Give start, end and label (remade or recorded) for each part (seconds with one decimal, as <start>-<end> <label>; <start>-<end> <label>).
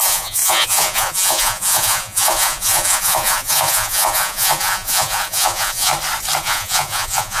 0.0-5.9 remade; 5.9-6.4 recorded; 6.4-7.4 remade